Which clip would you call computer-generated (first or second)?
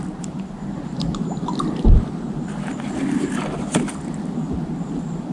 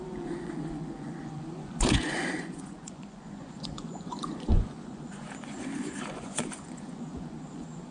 second